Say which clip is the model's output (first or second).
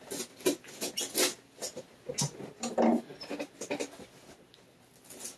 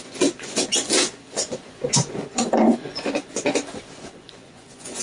second